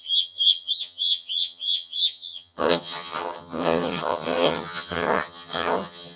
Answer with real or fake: fake